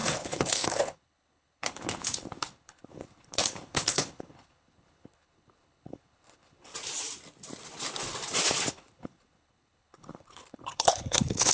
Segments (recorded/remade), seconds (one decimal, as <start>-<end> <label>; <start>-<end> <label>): 0.0-6.7 remade; 6.7-8.7 recorded; 8.7-11.5 remade